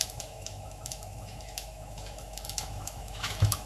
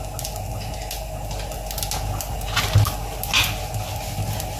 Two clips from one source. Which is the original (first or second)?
second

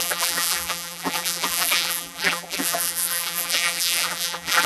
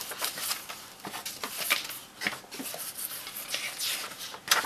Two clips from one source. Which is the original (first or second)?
second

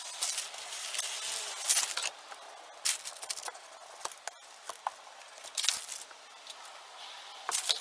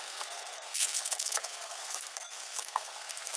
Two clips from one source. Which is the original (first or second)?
first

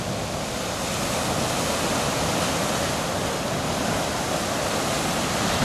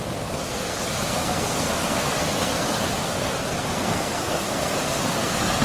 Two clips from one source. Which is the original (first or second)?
first